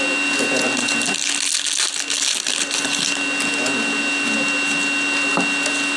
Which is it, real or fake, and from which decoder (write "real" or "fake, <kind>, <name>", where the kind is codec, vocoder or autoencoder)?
real